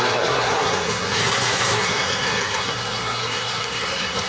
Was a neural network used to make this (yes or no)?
yes